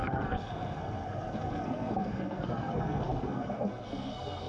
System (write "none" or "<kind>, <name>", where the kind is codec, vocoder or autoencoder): codec, SNAC